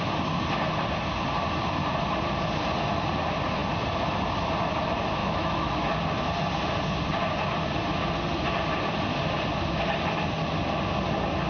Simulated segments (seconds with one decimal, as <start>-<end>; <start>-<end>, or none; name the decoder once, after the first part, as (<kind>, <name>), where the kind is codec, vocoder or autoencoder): 5.2-5.9 (autoencoder, DAC-VAE)